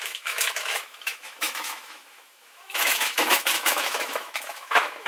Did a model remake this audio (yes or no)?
yes